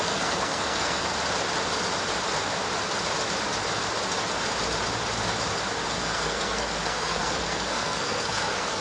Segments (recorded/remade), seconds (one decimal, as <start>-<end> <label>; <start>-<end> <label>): 0.0-1.1 remade; 1.1-5.9 recorded; 5.9-8.8 remade